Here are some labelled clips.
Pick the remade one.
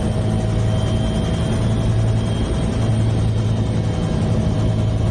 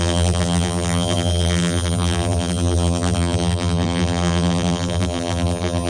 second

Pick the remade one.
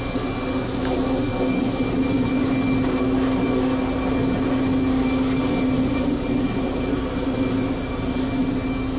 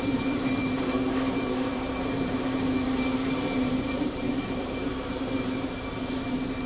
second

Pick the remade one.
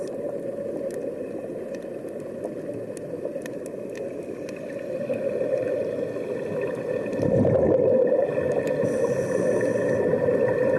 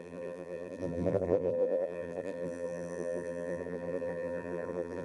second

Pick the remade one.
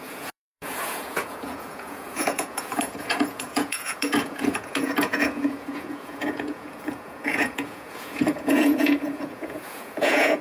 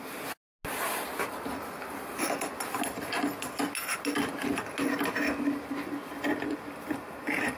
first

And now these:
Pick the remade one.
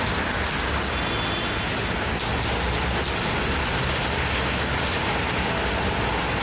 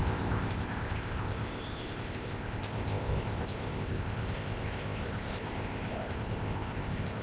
second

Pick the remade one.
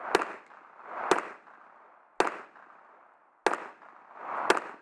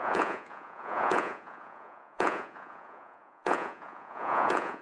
second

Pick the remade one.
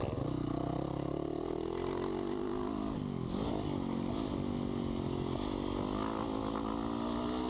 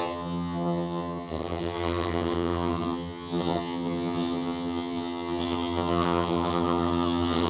second